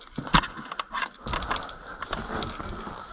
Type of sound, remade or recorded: recorded